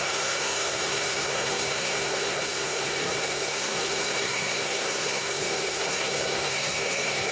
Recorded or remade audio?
remade